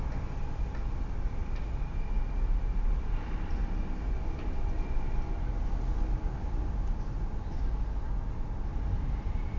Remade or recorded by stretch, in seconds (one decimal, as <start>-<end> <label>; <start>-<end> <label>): 0.0-9.6 recorded